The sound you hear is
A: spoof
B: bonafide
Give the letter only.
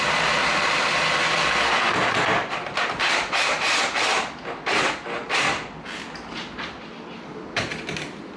B